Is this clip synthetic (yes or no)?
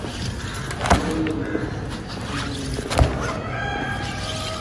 no